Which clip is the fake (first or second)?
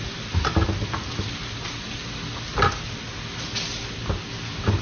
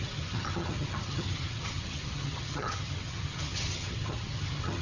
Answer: second